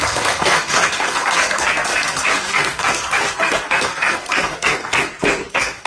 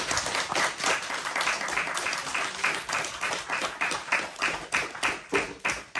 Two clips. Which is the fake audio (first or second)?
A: first